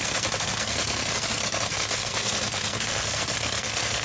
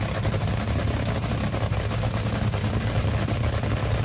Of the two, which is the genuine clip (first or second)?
second